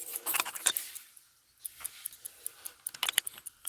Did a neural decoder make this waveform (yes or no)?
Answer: no